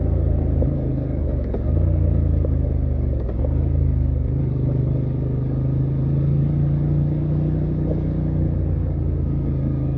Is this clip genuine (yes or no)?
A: no